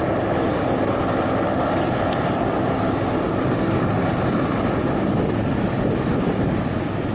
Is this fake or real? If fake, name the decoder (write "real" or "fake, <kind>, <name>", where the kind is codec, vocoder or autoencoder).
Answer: real